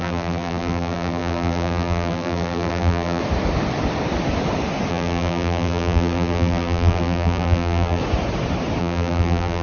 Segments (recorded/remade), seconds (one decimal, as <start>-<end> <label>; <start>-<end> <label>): 0.0-3.2 remade; 3.2-4.9 recorded; 4.9-8.0 remade; 8.0-8.8 recorded; 8.8-9.6 remade